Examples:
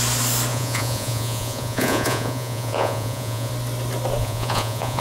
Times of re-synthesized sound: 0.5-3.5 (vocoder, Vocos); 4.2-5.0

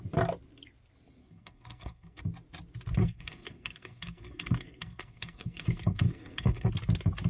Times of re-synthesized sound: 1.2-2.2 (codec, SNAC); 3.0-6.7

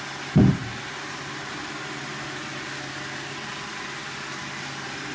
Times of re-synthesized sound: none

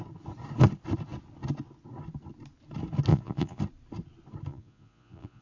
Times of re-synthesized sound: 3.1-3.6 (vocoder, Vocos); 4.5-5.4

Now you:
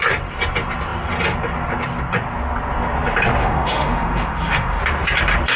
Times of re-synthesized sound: 3.4-4.8 (autoencoder, DAC-VAE)

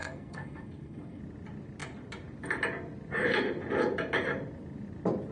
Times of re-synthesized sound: 0.0-1.2 (codec, SNAC)

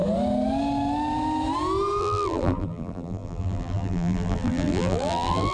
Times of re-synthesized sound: 2.0-5.5 (vocoder, BigVGAN v2)